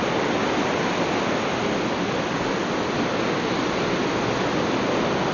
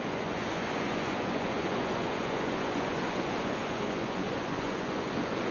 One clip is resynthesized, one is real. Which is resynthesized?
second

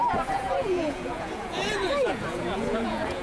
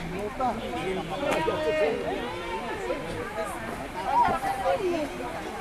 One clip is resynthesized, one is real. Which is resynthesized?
first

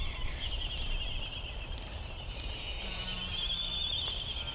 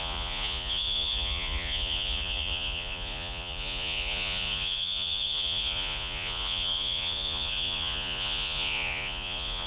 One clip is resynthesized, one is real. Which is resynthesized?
second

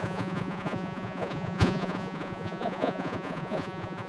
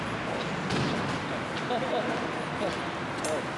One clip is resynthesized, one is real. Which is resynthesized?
first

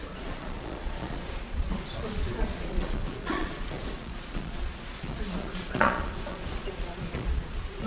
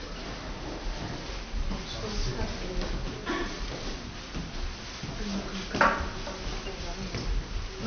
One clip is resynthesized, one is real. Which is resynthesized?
first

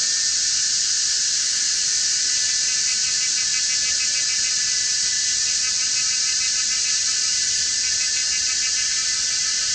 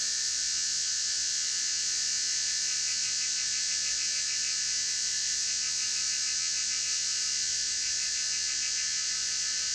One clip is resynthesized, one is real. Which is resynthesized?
second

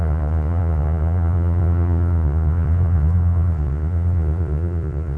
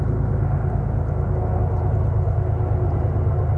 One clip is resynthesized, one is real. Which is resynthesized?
first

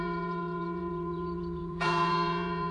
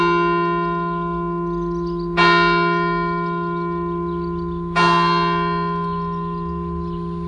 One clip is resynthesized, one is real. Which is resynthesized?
first